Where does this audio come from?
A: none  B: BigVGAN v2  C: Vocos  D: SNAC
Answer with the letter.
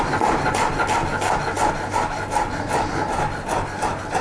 A